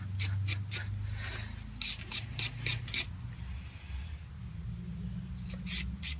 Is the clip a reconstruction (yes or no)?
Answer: no